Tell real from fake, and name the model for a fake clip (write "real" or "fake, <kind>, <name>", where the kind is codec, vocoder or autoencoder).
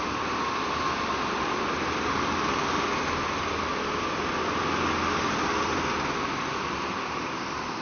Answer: real